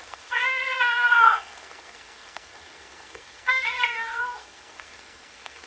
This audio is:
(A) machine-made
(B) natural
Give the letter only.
A